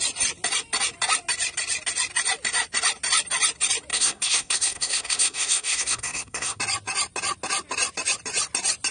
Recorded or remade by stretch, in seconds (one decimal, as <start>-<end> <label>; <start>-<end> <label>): 0.0-3.9 recorded; 3.9-6.6 remade; 6.6-8.9 recorded